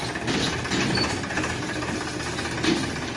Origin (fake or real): real